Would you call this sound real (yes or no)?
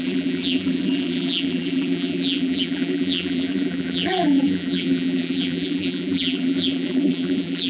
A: no